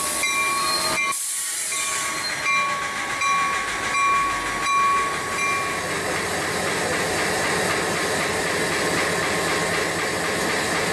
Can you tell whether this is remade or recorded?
recorded